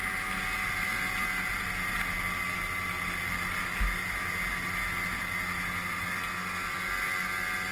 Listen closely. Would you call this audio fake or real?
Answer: real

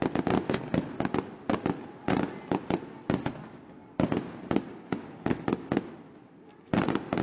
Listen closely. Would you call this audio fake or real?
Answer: real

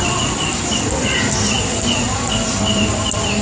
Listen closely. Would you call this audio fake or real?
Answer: real